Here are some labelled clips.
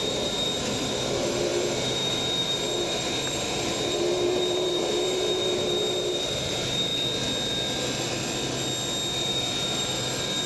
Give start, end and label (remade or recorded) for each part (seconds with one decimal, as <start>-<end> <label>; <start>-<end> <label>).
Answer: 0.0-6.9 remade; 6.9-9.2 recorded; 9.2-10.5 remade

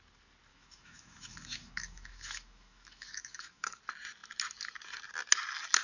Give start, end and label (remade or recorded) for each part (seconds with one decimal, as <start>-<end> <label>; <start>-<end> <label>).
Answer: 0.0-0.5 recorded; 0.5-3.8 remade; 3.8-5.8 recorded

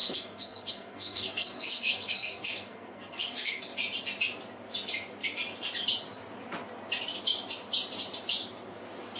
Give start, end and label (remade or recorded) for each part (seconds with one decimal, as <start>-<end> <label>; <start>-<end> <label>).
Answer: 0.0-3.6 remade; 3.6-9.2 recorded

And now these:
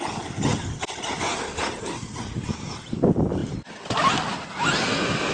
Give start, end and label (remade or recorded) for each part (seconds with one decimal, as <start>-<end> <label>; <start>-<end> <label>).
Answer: 0.0-5.3 recorded

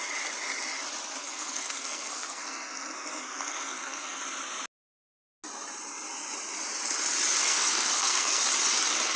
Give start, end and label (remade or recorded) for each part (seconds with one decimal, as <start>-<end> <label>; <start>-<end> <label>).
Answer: 0.0-1.2 recorded; 1.2-4.2 remade; 4.2-7.4 recorded; 7.4-8.4 remade; 8.4-9.2 recorded

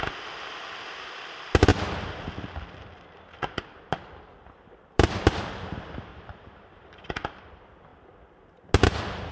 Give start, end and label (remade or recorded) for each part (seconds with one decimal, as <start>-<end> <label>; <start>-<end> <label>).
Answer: 0.0-1.7 remade; 1.7-2.8 recorded; 2.8-6.1 remade; 6.1-6.7 recorded; 6.7-7.9 remade; 7.9-9.3 recorded

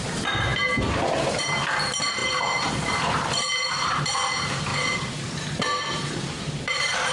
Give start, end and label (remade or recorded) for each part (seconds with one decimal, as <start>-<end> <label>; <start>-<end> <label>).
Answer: 0.0-4.7 remade; 4.7-5.9 recorded; 5.9-7.1 remade

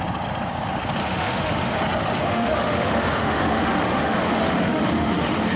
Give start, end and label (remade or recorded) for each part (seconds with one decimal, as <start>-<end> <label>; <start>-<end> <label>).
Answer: 0.0-1.0 recorded; 1.0-1.8 remade; 1.8-2.2 recorded; 2.2-5.6 remade